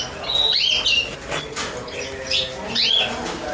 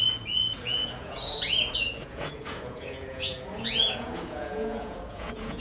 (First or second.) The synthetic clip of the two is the second